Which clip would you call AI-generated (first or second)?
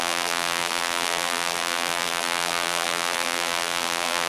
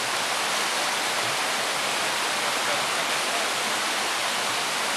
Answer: first